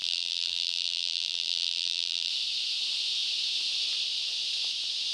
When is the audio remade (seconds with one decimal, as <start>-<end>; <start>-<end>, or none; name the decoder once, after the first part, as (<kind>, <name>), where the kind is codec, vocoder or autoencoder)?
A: 0.0-2.3 (vocoder, BigVGAN v2)